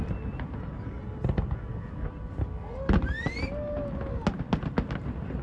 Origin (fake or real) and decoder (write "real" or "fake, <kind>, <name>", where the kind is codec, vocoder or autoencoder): real